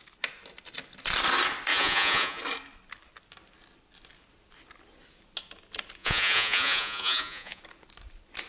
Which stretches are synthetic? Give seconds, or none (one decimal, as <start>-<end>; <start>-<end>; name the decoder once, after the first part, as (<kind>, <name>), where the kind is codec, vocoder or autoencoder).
1.7-2.4 (vocoder, Vocos); 6.0-7.6